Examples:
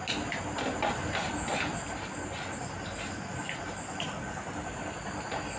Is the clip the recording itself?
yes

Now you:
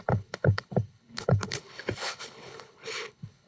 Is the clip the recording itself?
no